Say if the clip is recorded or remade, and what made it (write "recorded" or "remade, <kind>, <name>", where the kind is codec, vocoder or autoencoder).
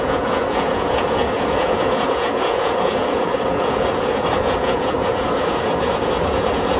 remade, vocoder, Vocos